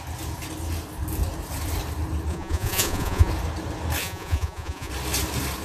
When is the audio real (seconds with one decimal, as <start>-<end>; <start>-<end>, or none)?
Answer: 0.0-2.3; 3.3-4.0; 4.9-5.6